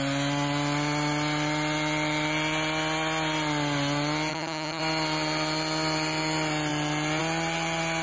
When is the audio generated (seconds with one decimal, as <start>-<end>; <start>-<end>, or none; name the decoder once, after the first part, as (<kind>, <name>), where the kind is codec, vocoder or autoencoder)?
4.3-4.8 (vocoder, HiFi-GAN)